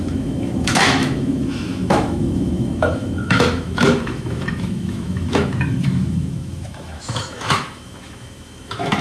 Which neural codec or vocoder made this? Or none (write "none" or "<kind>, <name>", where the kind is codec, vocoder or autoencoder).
autoencoder, DAC-VAE